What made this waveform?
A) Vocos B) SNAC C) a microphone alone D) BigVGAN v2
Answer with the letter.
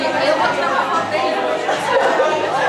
C